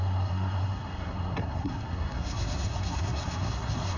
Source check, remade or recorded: remade